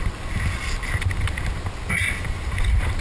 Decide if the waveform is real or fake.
real